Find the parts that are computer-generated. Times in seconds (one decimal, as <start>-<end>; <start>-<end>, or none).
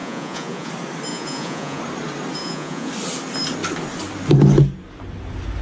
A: 0.0-0.7; 1.1-1.8; 2.4-2.9